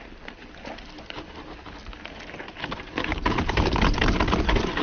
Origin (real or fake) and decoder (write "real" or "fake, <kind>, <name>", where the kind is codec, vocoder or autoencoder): real